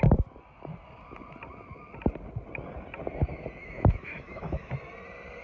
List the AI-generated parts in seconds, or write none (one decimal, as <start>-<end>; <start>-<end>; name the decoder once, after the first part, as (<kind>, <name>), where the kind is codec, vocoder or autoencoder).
3.6-4.7 (autoencoder, DAC-VAE)